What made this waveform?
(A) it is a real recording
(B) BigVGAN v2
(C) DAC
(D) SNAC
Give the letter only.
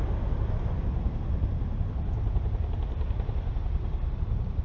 A